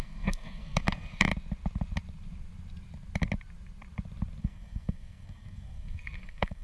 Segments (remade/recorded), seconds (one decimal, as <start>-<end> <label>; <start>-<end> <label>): 0.0-1.3 remade; 1.3-4.4 recorded; 4.4-6.6 remade